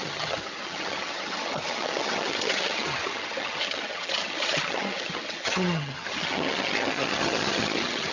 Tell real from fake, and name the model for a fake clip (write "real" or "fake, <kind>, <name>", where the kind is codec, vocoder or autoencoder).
fake, vocoder, HiFi-GAN